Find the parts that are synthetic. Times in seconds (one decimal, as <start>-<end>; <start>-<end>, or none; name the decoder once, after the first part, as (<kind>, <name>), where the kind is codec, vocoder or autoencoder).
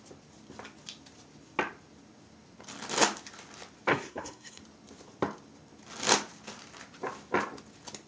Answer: 3.9-4.6 (codec, SNAC)